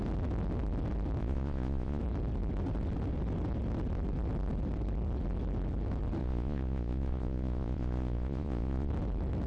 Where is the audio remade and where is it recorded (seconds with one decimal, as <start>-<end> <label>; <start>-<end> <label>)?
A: 0.0-1.2 recorded; 1.2-2.0 remade; 2.0-6.2 recorded; 6.2-8.9 remade; 8.9-9.5 recorded